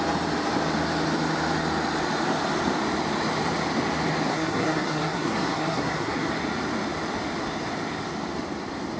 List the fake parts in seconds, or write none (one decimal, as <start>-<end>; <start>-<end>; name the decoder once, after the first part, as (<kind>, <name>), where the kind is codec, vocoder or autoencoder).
4.3-6.3 (codec, SNAC)